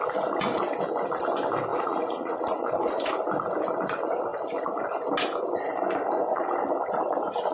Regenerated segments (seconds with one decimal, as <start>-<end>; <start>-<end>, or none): 1.7-3.1